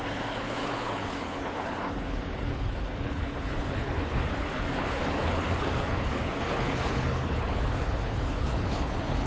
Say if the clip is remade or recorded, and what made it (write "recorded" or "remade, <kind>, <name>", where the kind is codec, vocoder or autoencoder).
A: remade, codec, HILCodec